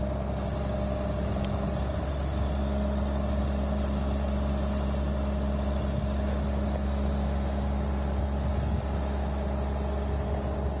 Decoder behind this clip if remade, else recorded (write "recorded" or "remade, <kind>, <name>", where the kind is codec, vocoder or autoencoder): recorded